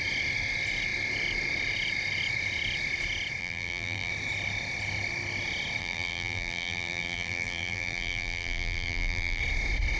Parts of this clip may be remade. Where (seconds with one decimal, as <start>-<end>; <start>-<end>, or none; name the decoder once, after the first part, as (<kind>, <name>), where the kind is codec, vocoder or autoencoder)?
3.4-4.1 (vocoder, BigVGAN v2); 5.8-9.4